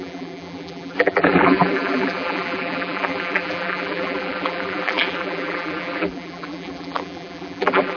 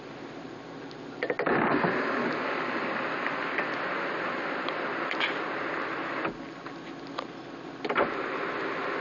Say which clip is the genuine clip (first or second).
second